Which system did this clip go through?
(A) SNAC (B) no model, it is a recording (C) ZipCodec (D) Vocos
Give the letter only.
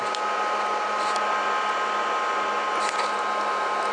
B